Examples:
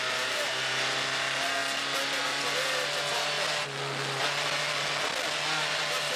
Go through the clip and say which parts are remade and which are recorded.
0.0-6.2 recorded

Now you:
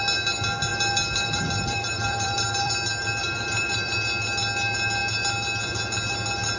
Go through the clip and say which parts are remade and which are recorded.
0.0-0.7 recorded; 0.7-2.7 remade; 2.7-3.2 recorded; 3.2-3.9 remade; 3.9-6.6 recorded

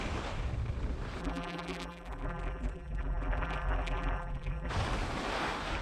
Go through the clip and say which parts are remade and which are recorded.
0.0-1.2 recorded; 1.2-4.7 remade; 4.7-5.8 recorded

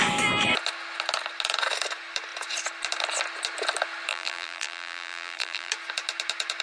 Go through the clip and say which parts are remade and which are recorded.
0.0-4.1 recorded; 4.1-5.7 remade; 5.7-6.6 recorded

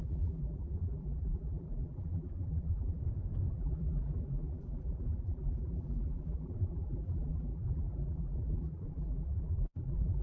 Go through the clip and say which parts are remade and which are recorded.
0.0-3.0 remade; 3.0-3.5 recorded; 3.5-10.2 remade

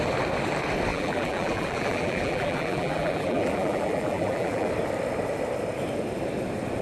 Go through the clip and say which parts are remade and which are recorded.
0.0-0.9 recorded; 0.9-4.7 remade; 4.7-6.8 recorded

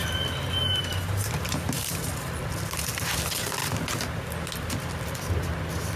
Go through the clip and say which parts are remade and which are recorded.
0.0-0.9 recorded; 0.9-2.1 remade; 2.1-6.0 recorded